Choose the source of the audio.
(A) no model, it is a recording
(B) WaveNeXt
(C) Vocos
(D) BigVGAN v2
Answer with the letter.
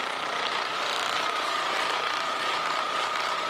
D